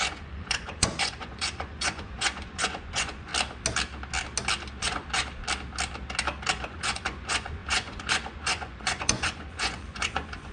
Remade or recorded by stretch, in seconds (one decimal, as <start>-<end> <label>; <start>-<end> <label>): 0.0-3.3 remade; 3.3-4.8 recorded; 4.8-5.2 remade; 5.2-6.5 recorded; 6.5-10.5 remade